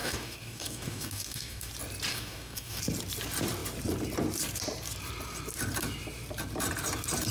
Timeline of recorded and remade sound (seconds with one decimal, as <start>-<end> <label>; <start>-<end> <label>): 0.0-1.7 remade; 1.7-2.1 recorded; 2.1-2.8 remade; 2.8-7.3 recorded